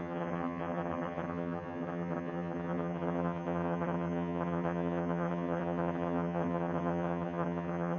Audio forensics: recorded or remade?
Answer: remade